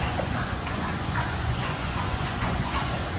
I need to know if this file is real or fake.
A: fake